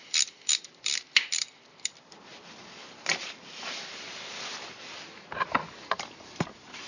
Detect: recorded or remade recorded